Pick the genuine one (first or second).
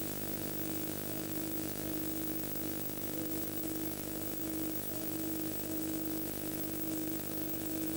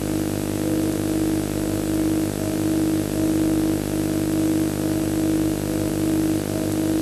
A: second